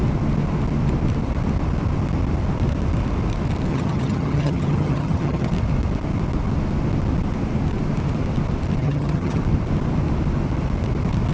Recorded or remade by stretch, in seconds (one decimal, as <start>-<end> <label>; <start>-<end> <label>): 0.0-3.7 recorded; 3.7-5.5 remade; 5.5-8.8 recorded; 8.8-9.4 remade; 9.4-11.3 recorded